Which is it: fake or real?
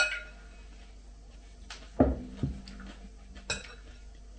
real